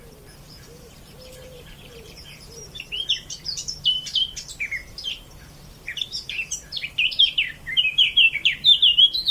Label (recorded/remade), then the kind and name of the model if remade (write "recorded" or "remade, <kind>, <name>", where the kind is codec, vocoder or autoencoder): remade, vocoder, BigVGAN v2